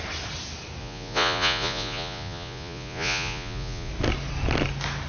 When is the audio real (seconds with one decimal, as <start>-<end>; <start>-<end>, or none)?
0.0-0.8; 3.9-5.1